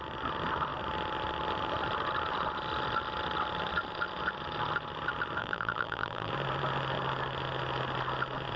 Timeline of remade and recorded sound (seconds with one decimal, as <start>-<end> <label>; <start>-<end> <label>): 0.0-5.4 recorded; 5.4-6.3 remade; 6.3-8.6 recorded